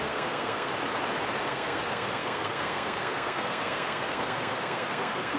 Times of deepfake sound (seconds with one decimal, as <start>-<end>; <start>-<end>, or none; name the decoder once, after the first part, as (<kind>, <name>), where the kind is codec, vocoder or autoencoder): 0.0-0.7 (codec, SNAC); 1.4-5.4